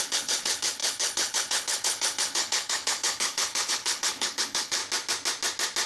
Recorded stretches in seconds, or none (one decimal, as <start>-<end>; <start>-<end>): 4.8-5.9